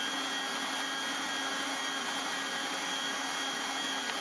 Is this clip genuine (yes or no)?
yes